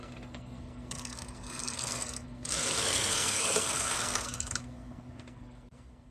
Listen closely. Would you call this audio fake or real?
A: fake